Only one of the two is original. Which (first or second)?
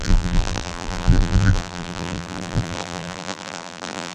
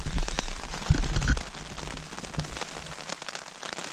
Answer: second